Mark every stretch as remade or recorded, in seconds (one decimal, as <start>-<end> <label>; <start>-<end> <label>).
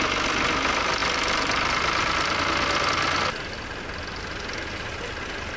0.0-5.6 recorded